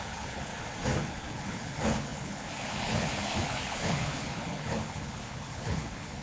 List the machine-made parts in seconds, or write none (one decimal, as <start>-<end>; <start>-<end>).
0.0-0.5; 1.1-6.2